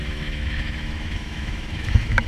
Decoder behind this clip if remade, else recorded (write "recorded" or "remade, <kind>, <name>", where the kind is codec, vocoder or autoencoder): remade, autoencoder, DAC-VAE